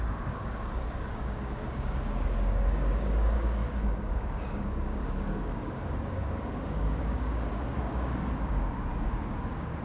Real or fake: fake